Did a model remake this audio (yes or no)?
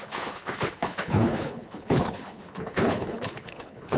yes